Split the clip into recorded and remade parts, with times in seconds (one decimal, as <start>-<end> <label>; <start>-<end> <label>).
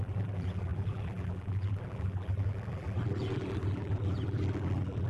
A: 0.0-5.1 remade